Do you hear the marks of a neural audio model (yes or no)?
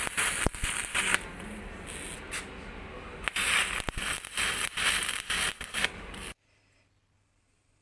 no